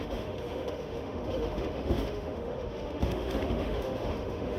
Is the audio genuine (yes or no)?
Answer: no